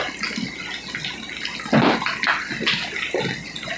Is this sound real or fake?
real